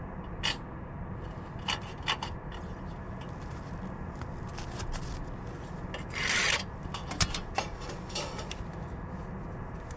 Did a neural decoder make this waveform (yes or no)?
no